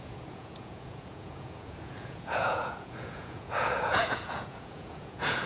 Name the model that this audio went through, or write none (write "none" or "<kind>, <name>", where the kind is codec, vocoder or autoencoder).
vocoder, Vocos